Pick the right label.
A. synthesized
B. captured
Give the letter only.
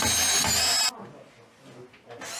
B